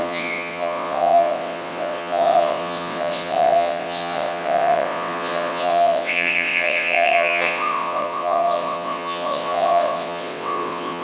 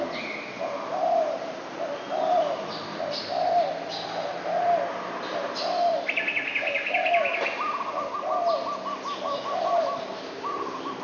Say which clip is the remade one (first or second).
first